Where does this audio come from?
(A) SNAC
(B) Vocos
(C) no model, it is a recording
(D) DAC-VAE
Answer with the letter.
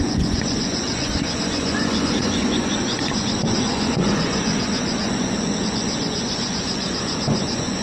B